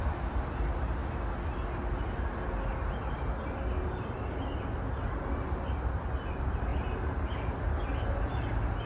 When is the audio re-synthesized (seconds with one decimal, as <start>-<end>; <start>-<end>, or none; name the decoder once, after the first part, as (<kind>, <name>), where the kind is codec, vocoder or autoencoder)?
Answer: 0.0-1.0 (vocoder, BigVGAN v2); 4.1-6.7; 7.5-8.9